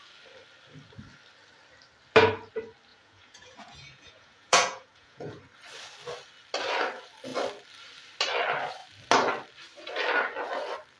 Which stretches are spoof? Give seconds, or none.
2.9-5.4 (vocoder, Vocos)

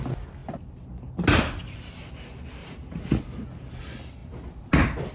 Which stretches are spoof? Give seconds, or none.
2.6-3.2 (vocoder, Vocos)

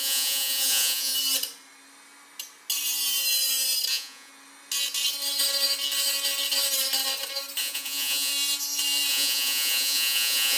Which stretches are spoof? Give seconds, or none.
0.0-1.1 (vocoder, Vocos); 3.9-4.3; 7.6-8.3; 9.1-10.6

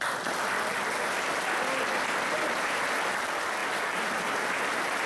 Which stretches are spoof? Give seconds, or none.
none

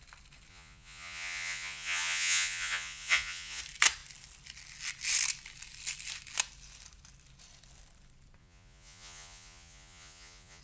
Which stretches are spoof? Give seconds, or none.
0.5-3.6 (vocoder, Vocos); 8.4-10.6

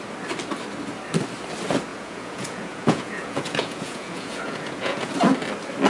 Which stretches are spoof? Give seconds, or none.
1.9-5.1 (vocoder, Vocos)